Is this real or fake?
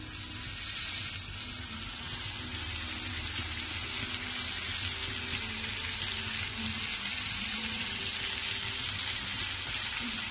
real